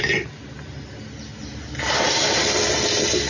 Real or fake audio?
real